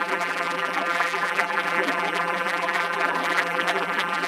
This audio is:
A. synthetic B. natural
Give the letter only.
A